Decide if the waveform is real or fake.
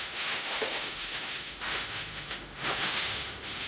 fake